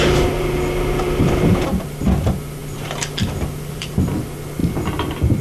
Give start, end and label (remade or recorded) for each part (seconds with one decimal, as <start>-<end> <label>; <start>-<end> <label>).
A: 0.0-2.6 recorded; 2.6-4.0 remade; 4.0-5.4 recorded